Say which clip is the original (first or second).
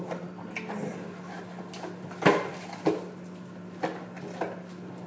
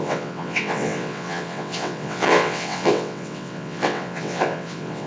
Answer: first